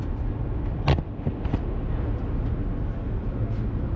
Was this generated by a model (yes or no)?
no